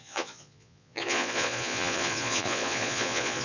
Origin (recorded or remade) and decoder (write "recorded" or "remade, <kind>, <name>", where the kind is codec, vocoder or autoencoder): remade, vocoder, Vocos